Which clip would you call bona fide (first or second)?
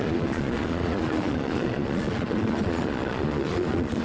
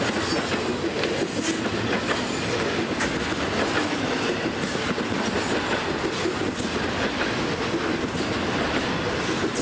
second